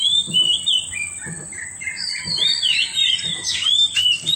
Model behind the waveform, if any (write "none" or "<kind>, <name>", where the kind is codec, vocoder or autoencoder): vocoder, BigVGAN v2